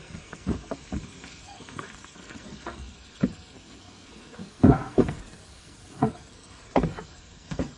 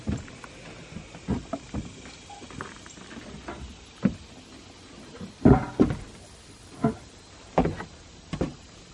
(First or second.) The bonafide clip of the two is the second